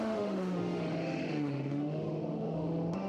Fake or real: fake